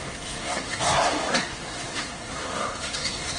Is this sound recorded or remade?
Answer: remade